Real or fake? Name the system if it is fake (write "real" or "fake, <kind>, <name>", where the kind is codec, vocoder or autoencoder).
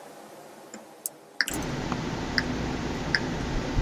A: real